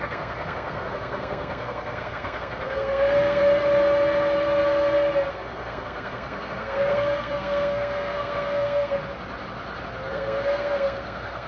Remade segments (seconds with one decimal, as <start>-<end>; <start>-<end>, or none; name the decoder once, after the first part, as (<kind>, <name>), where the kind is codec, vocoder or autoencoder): 0.0-3.4 (codec, SNAC); 5.3-9.0; 10.1-11.5